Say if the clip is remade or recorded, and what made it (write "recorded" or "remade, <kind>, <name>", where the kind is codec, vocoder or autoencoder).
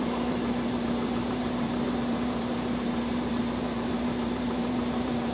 remade, vocoder, BigVGAN v2